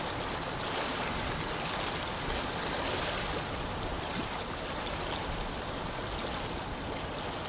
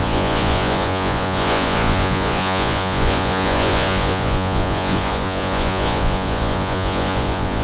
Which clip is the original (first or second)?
first